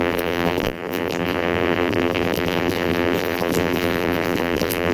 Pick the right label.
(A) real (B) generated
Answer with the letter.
B